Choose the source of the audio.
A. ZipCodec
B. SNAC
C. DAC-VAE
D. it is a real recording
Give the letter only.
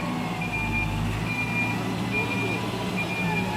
D